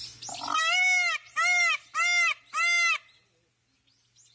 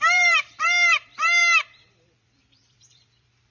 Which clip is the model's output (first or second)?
second